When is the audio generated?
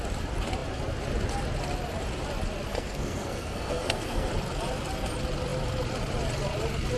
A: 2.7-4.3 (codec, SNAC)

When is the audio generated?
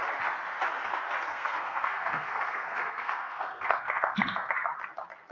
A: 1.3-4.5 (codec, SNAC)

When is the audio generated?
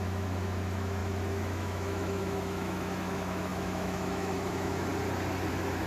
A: 0.0-4.9 (autoencoder, DAC-VAE); 5.5-5.9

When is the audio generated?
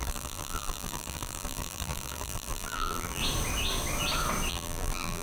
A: 0.0-3.2 (vocoder, BigVGAN v2); 4.5-5.2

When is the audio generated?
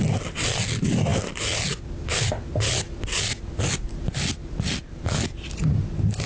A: none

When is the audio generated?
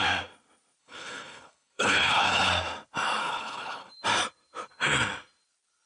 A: 0.8-2.5 (codec, HILCodec); 3.2-3.9